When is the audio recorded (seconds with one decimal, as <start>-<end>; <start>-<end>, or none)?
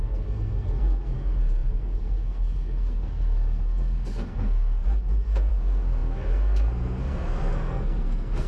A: none